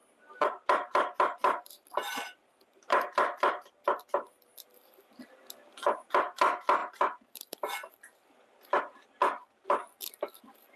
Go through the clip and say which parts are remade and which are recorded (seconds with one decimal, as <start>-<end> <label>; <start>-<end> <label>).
0.0-5.2 remade; 5.2-6.8 recorded; 6.8-7.7 remade; 7.7-10.8 recorded